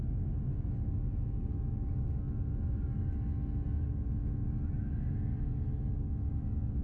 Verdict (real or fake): real